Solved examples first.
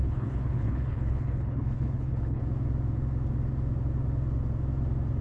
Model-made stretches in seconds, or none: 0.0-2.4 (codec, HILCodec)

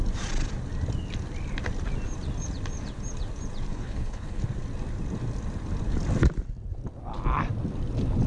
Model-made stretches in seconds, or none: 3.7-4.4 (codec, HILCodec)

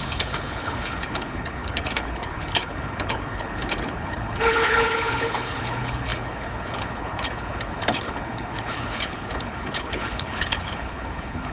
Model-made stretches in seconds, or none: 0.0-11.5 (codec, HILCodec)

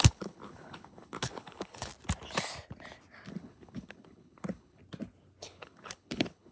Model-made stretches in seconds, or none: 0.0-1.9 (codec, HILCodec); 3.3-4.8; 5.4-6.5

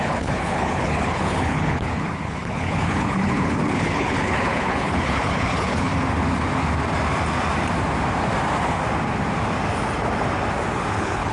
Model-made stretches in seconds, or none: 0.0-5.9 (codec, HILCodec); 10.9-11.3